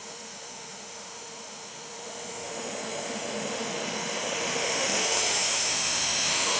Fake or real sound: fake